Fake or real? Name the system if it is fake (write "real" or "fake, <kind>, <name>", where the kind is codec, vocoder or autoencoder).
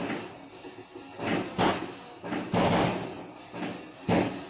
real